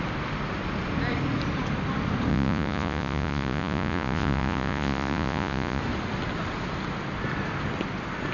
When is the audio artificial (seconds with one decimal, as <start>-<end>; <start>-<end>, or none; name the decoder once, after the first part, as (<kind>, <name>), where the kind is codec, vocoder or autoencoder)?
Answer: 2.3-5.8 (vocoder, Vocos)